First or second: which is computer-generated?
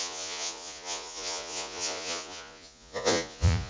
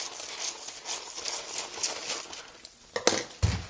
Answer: first